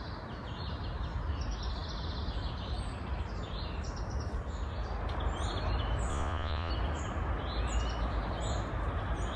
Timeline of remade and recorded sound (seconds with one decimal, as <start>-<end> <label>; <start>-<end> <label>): 0.0-6.1 recorded; 6.1-6.7 remade; 6.7-9.4 recorded

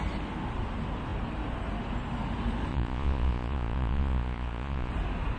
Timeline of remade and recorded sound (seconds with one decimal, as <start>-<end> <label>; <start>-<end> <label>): 0.0-2.7 recorded; 2.7-4.9 remade; 4.9-5.4 recorded

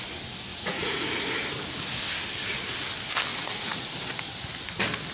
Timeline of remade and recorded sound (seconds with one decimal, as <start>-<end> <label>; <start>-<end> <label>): 0.0-0.5 recorded; 0.5-1.1 remade; 1.1-3.3 recorded; 3.3-3.9 remade; 3.9-5.1 recorded

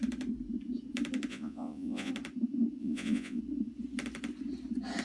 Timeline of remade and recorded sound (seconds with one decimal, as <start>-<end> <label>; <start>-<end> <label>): 0.0-1.3 recorded; 1.3-2.1 remade; 2.1-2.8 recorded; 2.8-3.4 remade; 3.4-5.0 recorded

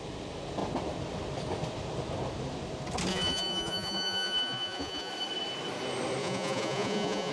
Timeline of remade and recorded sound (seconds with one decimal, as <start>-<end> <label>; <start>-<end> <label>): 0.0-3.1 recorded; 3.1-5.1 remade; 5.1-6.2 recorded; 6.2-7.3 remade

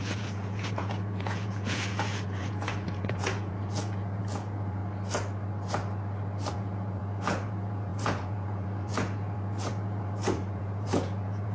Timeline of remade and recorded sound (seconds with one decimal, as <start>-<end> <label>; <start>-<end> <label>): 0.0-4.8 remade; 4.8-6.5 recorded; 6.5-11.5 remade

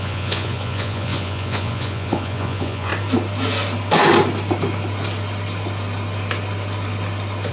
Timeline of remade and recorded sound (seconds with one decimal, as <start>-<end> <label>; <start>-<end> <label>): 0.0-2.9 remade; 2.9-7.5 recorded

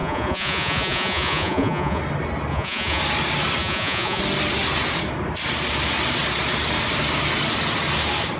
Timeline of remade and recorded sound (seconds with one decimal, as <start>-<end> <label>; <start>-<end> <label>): 0.0-2.0 remade; 2.0-2.5 recorded; 2.5-3.0 remade; 3.0-3.6 recorded; 3.6-4.2 remade; 4.2-8.4 recorded